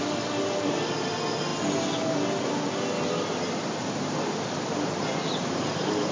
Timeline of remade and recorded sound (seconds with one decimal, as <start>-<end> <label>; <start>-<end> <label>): 0.0-6.1 recorded